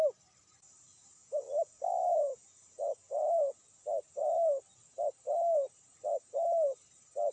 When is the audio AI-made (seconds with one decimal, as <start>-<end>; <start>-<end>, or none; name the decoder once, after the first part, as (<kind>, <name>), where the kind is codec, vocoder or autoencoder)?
1.2-3.8 (vocoder, Vocos)